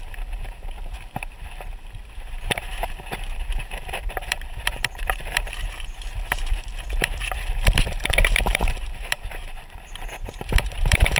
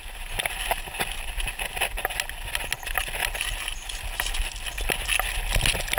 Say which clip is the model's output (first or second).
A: first